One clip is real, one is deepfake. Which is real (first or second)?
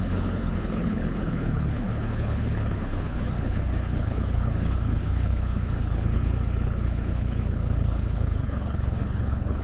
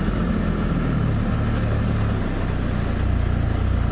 second